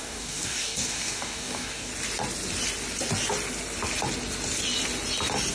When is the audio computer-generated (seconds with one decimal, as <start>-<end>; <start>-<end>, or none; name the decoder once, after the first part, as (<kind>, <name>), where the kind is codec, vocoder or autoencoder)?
0.0-1.9 (codec, DAC)